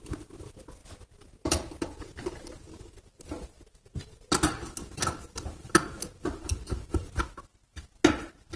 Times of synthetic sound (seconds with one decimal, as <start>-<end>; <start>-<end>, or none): none